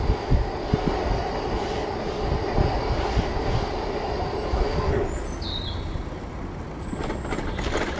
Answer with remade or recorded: recorded